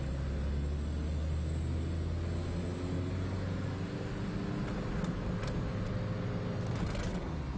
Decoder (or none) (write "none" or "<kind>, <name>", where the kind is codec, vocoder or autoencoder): none